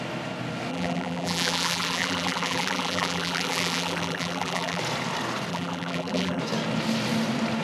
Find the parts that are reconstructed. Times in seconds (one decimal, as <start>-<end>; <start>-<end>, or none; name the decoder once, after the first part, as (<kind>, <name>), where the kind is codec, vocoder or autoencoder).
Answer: 0.7-4.8 (vocoder, BigVGAN v2); 5.5-6.4